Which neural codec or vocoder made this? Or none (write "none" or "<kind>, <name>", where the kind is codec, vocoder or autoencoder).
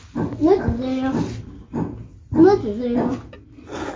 none